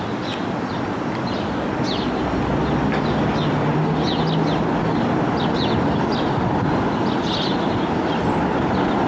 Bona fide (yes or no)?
yes